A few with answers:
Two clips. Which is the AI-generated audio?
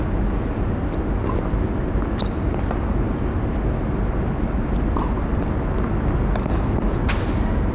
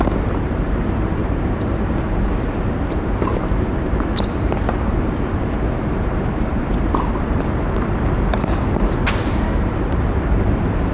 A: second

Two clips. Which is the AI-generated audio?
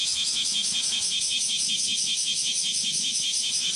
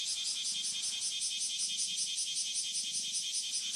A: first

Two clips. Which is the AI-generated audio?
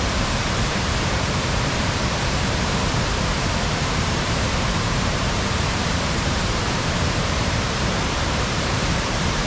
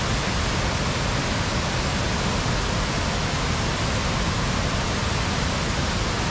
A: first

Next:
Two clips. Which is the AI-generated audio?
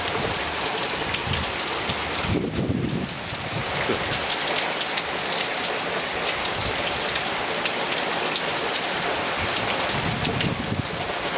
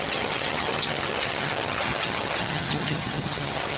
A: second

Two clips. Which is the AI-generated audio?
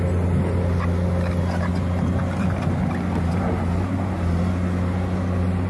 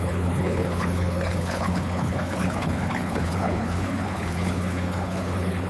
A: second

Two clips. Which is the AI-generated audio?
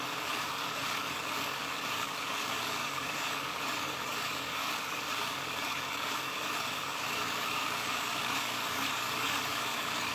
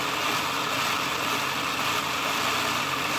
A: first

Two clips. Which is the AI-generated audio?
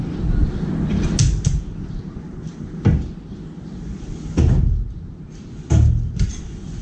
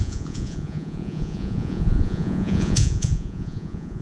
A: second